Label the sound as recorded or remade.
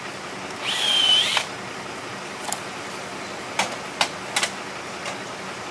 recorded